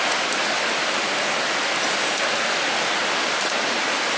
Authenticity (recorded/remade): recorded